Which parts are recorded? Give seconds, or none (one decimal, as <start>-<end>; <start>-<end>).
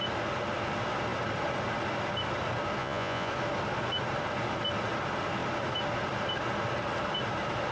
0.0-2.8; 3.3-7.7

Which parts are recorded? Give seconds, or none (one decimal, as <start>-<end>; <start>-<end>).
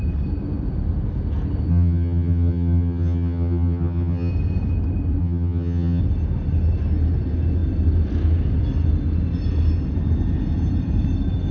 0.0-1.7; 4.3-5.2; 6.0-11.5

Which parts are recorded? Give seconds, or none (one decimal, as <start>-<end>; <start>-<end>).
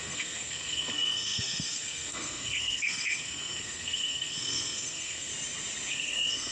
5.3-5.9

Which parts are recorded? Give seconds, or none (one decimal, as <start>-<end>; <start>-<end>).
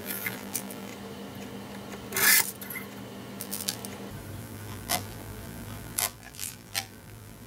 0.9-3.4; 3.8-4.4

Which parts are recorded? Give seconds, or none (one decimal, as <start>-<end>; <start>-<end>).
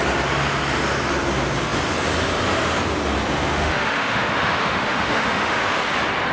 0.0-3.5; 5.8-6.3